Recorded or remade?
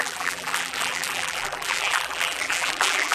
remade